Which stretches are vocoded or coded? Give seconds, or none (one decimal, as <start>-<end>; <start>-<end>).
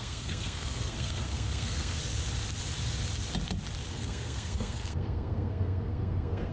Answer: 0.0-2.0; 3.9-6.5